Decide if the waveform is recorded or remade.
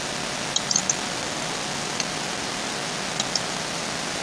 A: recorded